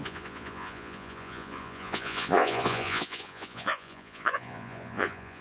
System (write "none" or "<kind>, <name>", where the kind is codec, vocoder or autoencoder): vocoder, Vocos